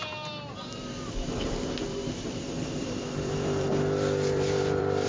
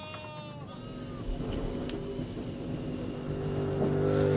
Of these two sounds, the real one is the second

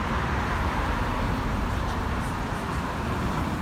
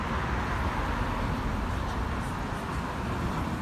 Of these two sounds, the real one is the second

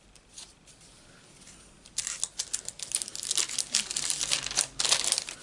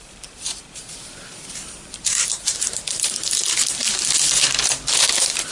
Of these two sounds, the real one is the first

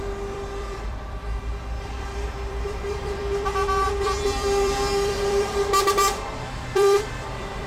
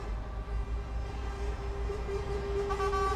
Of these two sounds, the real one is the second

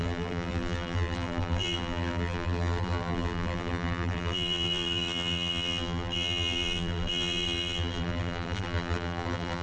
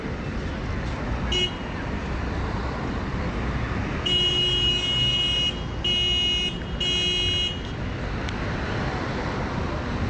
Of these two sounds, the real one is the second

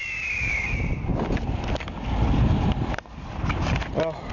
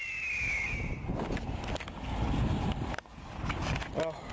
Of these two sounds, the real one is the second